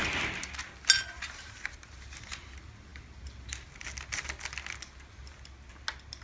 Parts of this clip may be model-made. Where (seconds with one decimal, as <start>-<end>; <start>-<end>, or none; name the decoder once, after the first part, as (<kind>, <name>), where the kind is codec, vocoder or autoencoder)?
none